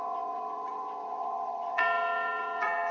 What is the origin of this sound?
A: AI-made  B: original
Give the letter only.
A